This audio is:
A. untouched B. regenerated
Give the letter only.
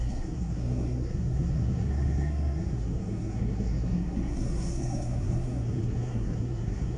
B